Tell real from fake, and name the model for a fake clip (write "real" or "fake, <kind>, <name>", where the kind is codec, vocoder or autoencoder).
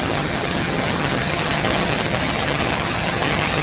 fake, vocoder, HiFi-GAN